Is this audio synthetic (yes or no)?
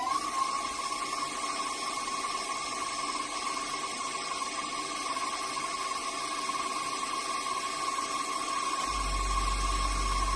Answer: no